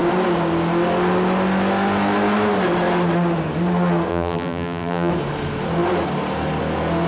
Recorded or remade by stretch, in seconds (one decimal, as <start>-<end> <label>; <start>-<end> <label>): 0.0-4.1 recorded; 4.1-5.1 remade; 5.1-7.1 recorded